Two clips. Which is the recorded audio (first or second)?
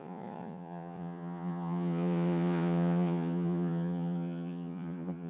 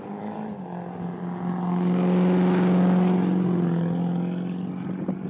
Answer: second